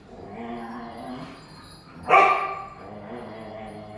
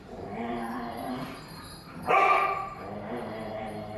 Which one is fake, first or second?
second